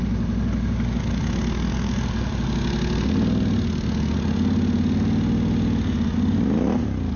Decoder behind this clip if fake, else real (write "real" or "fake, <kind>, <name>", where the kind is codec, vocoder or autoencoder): real